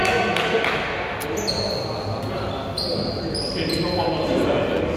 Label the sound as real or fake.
real